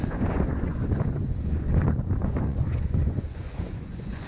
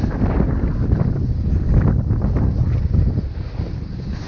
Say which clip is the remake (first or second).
first